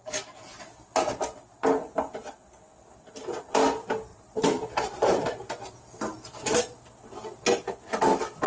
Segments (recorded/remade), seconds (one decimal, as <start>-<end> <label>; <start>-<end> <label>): 0.0-4.1 recorded; 4.1-5.7 remade; 5.7-8.5 recorded